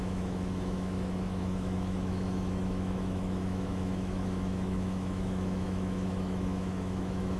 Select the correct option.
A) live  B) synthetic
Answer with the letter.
B